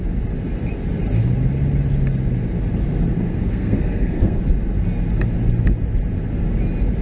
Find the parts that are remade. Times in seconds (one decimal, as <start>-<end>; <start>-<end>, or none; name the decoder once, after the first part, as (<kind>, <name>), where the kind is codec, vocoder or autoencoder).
3.3-4.4 (codec, SNAC)